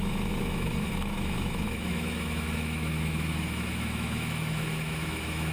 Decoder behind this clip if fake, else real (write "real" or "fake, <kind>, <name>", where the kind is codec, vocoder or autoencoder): fake, autoencoder, DAC-VAE